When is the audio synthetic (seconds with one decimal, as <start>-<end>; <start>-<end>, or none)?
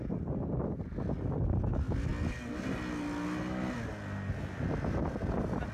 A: none